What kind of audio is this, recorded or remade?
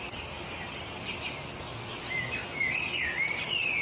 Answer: recorded